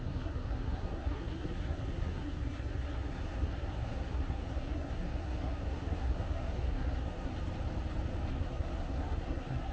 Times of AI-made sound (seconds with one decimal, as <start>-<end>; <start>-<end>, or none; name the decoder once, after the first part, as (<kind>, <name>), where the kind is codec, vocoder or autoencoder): 0.0-7.3 (codec, SNAC); 8.3-9.7